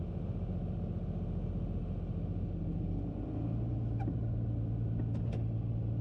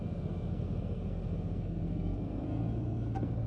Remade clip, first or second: second